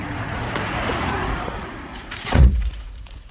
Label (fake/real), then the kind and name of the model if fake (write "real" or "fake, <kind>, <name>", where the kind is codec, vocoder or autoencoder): fake, vocoder, Vocos